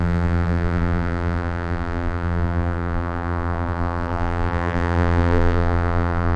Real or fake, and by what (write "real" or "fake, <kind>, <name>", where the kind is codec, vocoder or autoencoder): fake, vocoder, BigVGAN v2